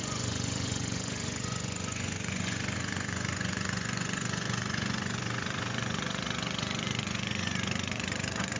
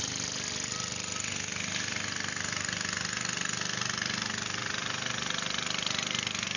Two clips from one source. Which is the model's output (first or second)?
first